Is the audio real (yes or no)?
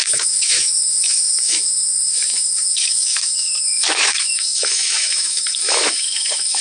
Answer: no